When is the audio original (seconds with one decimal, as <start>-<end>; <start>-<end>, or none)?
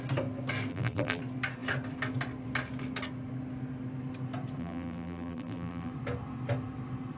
0.0-0.7; 1.2-4.6; 5.9-7.2